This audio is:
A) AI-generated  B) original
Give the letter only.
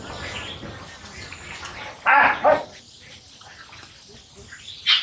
B